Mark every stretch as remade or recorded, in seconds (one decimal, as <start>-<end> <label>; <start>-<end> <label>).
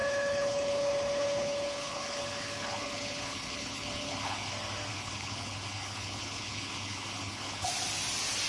0.0-4.5 remade; 4.5-4.9 recorded; 4.9-7.7 remade; 7.7-8.5 recorded